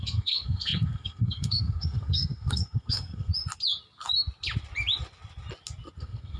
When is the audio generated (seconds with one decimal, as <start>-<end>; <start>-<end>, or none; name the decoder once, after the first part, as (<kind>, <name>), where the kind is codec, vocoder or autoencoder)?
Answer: 0.0-3.3 (codec, SNAC); 6.0-6.4